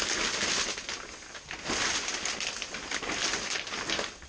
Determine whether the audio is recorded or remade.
recorded